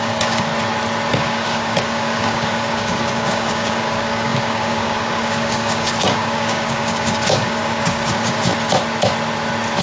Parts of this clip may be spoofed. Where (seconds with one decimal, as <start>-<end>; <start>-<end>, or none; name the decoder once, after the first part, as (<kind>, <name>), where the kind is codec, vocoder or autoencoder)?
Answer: 0.0-0.5 (codec, DAC); 1.1-8.5